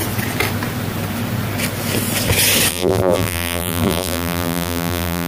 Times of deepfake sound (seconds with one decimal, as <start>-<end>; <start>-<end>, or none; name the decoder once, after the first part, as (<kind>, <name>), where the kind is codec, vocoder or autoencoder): 2.7-5.3 (vocoder, BigVGAN v2)